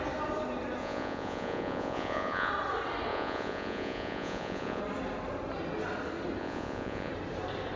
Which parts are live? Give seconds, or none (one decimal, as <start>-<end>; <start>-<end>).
0.0-0.8; 2.5-3.1; 4.8-6.4; 7.1-7.8